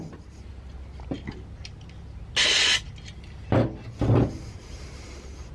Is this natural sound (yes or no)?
yes